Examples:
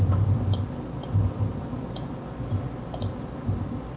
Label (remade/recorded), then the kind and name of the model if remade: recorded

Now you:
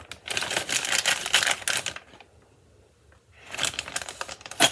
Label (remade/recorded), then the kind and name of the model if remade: recorded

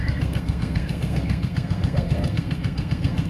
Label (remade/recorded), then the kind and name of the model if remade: remade, codec, SNAC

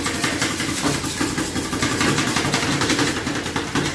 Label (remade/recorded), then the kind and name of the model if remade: recorded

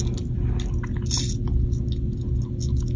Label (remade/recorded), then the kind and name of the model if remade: recorded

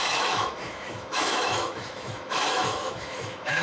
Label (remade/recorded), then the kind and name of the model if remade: remade, autoencoder, DAC-VAE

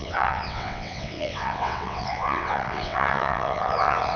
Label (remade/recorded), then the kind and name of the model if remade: remade, vocoder, WaveNeXt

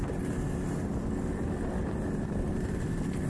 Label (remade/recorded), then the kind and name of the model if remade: recorded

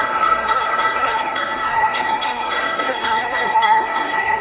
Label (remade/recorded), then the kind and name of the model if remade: remade, codec, SNAC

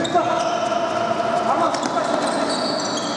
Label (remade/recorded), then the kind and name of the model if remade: recorded